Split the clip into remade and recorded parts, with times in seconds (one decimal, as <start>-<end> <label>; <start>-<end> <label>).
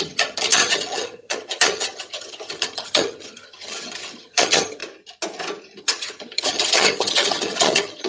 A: 0.0-4.8 remade; 4.8-5.8 recorded; 5.8-8.1 remade